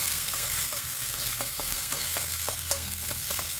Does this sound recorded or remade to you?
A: remade